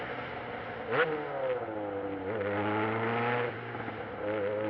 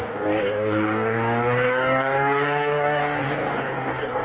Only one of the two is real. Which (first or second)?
first